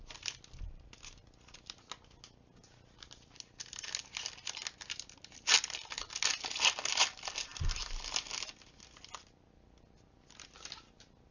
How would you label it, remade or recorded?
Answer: recorded